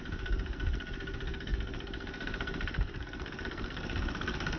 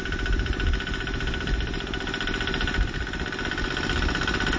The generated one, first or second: first